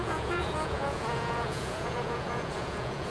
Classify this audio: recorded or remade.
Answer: remade